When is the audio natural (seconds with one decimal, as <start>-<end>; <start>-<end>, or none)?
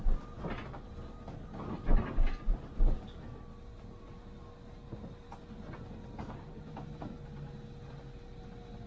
0.0-8.9